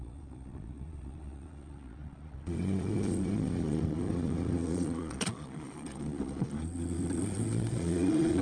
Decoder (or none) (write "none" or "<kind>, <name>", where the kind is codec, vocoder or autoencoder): vocoder, Vocos